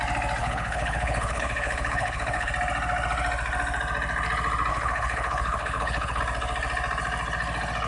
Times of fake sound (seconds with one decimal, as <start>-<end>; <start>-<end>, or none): 0.4-2.5; 4.7-6.2